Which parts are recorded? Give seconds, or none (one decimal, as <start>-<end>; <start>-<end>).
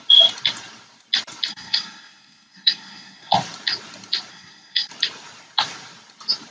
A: 0.0-1.5; 3.3-4.3; 4.9-6.5